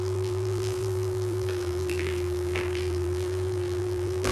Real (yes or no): no